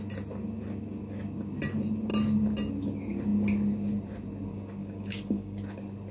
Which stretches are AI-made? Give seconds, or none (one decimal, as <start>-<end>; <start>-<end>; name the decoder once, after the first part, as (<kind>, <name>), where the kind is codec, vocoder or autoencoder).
4.8-5.6 (codec, DAC)